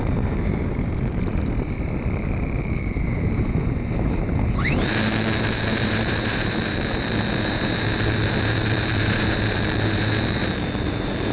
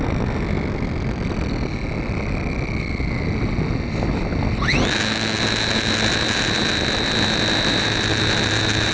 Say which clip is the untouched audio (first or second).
second